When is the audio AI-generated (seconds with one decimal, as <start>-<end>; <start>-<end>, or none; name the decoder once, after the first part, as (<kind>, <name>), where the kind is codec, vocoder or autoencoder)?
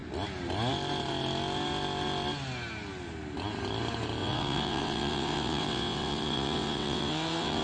4.2-7.6 (vocoder, WaveNeXt)